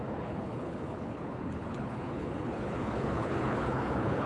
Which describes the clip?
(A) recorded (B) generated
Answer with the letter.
B